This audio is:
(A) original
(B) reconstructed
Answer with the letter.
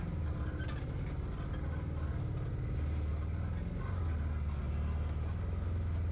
A